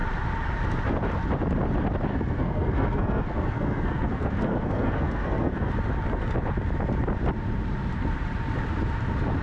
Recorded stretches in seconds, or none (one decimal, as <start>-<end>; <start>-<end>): 0.0-2.1; 5.7-9.4